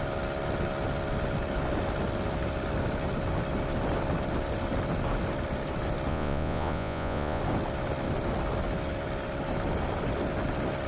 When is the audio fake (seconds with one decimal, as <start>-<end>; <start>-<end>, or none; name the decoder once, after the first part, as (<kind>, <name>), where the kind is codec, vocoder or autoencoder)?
6.1-7.4 (vocoder, Vocos)